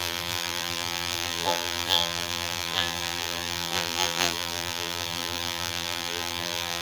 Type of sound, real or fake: fake